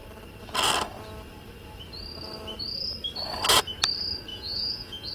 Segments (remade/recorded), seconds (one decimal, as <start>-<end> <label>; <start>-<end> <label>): 0.0-4.3 recorded; 4.3-5.1 remade